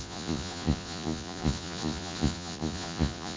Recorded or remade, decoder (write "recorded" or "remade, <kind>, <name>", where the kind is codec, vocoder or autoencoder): remade, vocoder, Vocos